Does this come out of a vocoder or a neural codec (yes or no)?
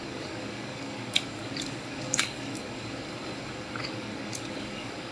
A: yes